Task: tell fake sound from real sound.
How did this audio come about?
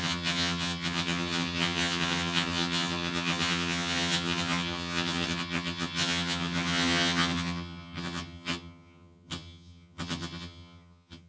fake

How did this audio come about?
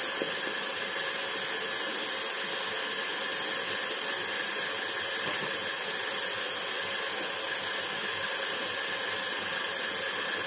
real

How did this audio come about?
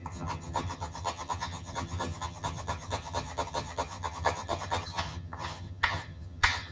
fake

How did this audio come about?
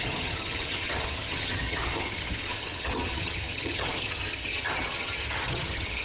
fake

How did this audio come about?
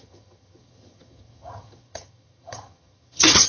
fake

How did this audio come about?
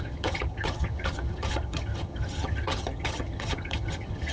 fake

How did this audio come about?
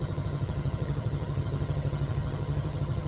fake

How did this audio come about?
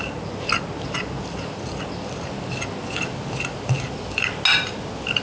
real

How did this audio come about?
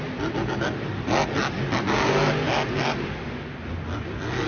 real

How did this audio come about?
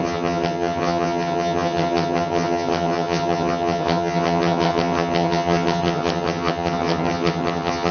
fake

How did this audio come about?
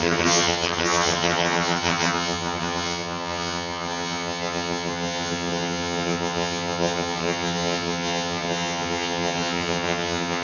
fake